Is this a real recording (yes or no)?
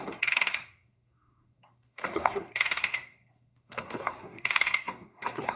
no